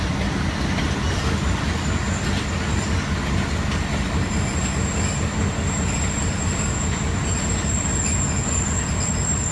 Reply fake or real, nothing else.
real